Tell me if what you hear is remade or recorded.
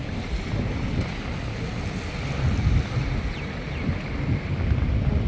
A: recorded